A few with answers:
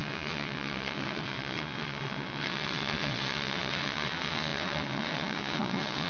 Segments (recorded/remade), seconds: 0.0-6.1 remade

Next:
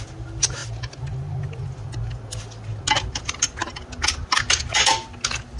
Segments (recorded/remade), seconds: 0.0-5.6 recorded

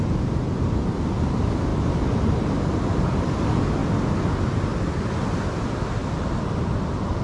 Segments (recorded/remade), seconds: 0.0-7.2 recorded

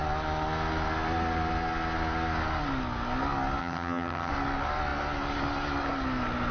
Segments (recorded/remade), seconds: 0.0-3.6 recorded; 3.6-4.3 remade; 4.3-6.5 recorded

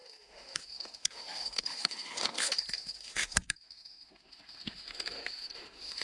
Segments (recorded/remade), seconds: 0.0-6.0 remade

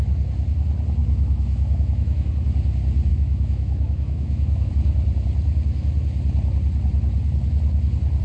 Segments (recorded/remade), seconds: 0.0-1.0 recorded; 1.0-2.3 remade; 2.3-3.1 recorded; 3.1-4.7 remade; 4.7-8.2 recorded